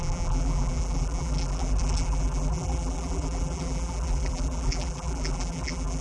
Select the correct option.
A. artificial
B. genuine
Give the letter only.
A